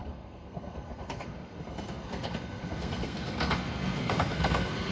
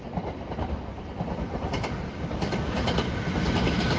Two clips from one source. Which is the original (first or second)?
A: second